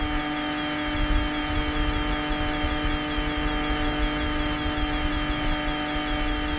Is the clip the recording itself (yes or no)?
yes